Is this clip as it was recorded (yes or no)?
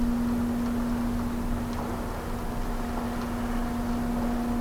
yes